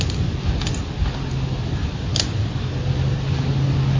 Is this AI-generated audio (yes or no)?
no